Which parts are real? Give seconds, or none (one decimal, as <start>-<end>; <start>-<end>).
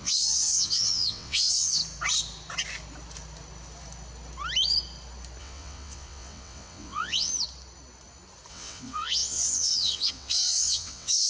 1.8-5.4; 7.3-8.5